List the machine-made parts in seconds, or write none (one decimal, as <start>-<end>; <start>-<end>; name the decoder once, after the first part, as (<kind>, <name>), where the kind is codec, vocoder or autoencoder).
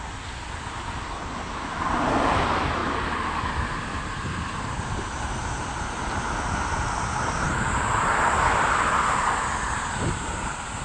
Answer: none